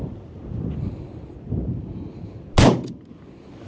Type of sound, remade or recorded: recorded